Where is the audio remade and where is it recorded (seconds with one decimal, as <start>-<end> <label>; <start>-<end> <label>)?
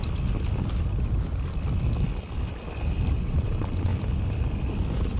0.0-3.1 recorded; 3.1-3.9 remade; 3.9-5.2 recorded